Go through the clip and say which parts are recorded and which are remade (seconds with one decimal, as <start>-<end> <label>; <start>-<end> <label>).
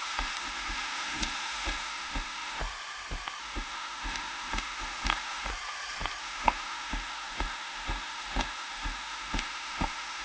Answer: 0.0-2.6 remade; 2.6-3.4 recorded; 3.4-5.5 remade; 5.5-6.2 recorded; 6.2-10.2 remade